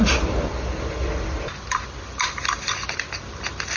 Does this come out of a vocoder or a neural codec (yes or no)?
yes